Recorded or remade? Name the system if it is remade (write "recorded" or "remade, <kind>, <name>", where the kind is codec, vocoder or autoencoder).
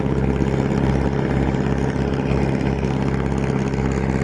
recorded